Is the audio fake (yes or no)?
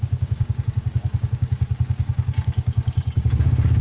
yes